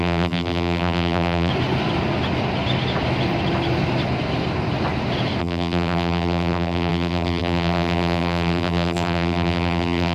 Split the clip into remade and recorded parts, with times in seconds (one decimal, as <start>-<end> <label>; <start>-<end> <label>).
0.0-1.5 remade; 1.5-5.4 recorded; 5.4-10.1 remade